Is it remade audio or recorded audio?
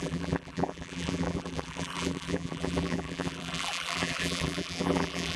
remade